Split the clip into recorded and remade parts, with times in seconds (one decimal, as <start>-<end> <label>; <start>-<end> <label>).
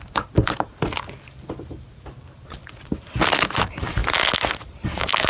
0.0-2.6 remade; 2.6-3.5 recorded; 3.5-4.0 remade; 4.0-4.5 recorded; 4.5-5.3 remade